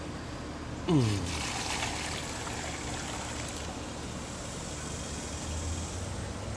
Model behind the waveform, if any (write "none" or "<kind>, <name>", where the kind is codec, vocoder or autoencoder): none